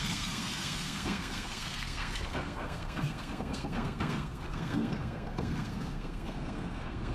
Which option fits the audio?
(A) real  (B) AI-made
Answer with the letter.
B